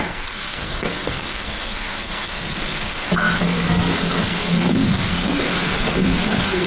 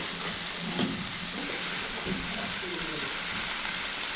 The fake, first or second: first